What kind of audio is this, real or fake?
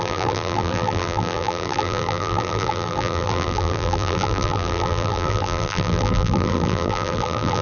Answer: fake